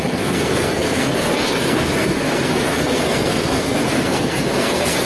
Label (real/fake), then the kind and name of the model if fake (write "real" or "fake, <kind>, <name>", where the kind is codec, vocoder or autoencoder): fake, codec, SNAC